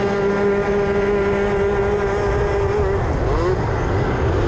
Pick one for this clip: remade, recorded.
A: recorded